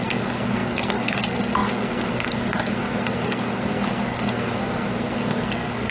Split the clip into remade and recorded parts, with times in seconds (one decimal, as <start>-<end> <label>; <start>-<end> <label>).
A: 0.0-5.9 remade